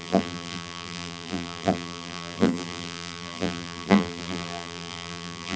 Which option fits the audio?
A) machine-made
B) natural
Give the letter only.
A